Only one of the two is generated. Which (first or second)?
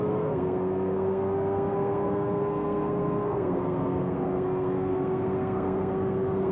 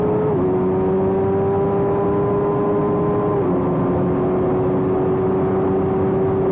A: first